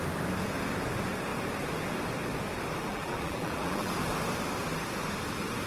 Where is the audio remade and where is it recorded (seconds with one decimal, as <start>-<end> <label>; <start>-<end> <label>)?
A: 0.0-2.9 recorded; 2.9-3.9 remade; 3.9-5.7 recorded